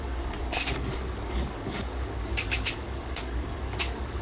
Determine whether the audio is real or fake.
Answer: fake